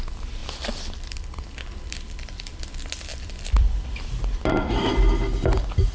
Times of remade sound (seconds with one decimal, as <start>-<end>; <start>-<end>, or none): 0.4-2.6; 3.1-4.9